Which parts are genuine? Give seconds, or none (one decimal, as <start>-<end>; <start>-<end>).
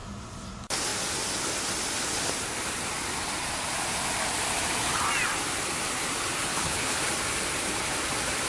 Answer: 0.0-6.5; 7.0-8.5